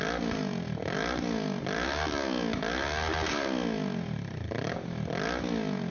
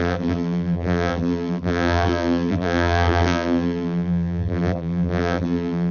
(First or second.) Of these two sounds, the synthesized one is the second